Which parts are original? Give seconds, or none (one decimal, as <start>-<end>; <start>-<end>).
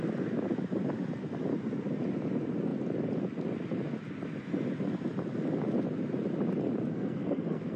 0.0-6.9